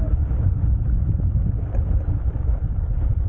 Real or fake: real